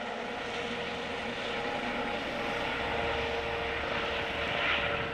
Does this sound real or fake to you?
real